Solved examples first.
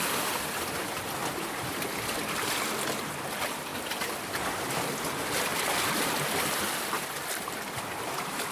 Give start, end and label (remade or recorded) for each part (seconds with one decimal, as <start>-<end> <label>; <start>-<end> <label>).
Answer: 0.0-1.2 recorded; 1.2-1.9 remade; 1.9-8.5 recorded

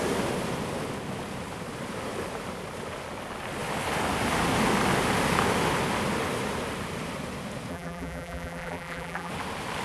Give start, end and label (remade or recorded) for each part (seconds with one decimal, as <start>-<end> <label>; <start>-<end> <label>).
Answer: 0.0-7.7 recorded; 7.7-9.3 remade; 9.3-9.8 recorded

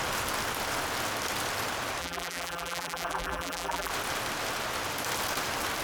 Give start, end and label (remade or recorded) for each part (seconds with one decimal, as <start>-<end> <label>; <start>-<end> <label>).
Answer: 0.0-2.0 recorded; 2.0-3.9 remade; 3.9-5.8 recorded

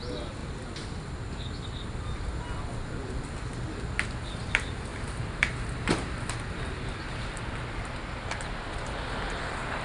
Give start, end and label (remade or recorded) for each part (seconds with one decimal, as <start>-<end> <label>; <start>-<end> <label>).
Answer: 0.0-4.9 recorded; 4.9-7.5 remade; 7.5-9.8 recorded

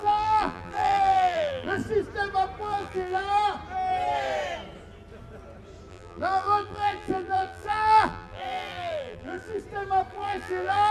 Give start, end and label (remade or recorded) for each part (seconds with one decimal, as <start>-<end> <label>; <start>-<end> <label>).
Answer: 0.0-1.8 remade; 1.8-2.6 recorded; 2.6-3.2 remade; 3.2-5.9 recorded; 5.9-9.6 remade; 9.6-10.1 recorded; 10.1-10.9 remade

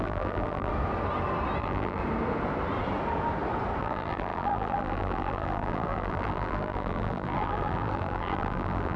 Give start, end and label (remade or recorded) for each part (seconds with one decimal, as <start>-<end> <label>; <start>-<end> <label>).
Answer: 0.0-0.7 remade; 0.7-1.6 recorded; 1.6-2.0 remade; 2.0-3.8 recorded; 3.8-9.0 remade